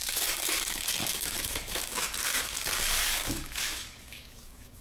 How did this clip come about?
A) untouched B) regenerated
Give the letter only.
B